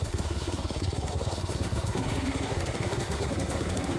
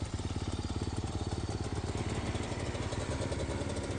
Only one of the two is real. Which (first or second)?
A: second